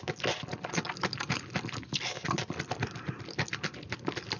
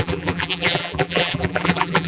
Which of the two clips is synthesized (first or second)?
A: second